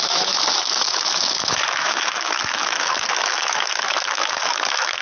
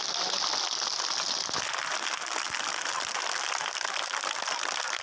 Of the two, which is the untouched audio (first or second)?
second